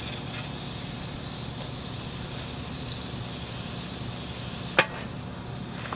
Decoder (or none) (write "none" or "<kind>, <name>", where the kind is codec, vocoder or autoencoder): none